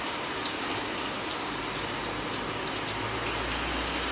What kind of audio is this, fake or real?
real